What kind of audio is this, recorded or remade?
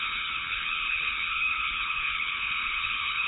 remade